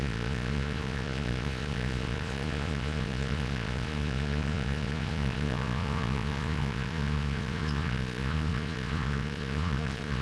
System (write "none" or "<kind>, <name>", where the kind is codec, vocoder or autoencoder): vocoder, Vocos